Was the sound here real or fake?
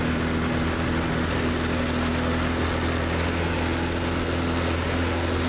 real